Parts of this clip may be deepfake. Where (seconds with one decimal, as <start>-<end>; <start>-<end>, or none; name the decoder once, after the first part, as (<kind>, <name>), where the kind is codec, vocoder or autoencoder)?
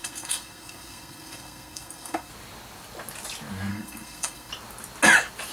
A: 0.0-2.3 (codec, SNAC); 3.7-4.5